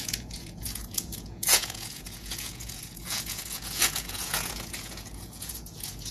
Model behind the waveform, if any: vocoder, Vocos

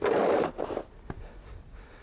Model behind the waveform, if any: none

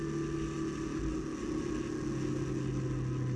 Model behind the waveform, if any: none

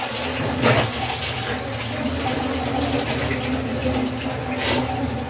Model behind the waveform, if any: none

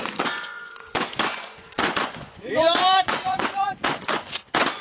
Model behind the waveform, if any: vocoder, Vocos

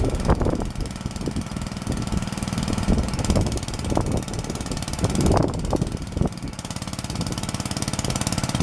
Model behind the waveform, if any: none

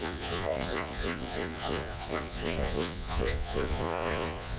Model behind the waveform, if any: vocoder, Vocos